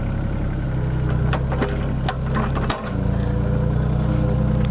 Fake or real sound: real